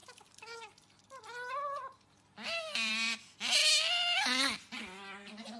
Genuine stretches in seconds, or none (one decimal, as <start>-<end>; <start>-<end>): 0.0-5.6